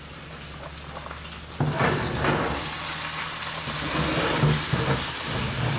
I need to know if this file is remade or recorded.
recorded